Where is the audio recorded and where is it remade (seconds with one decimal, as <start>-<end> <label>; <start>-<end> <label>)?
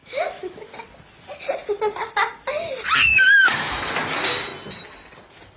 0.0-0.6 remade; 0.6-3.1 recorded; 3.1-3.9 remade; 3.9-5.6 recorded